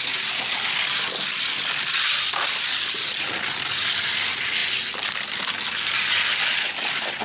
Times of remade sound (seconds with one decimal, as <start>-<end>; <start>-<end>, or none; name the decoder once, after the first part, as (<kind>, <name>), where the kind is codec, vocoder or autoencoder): none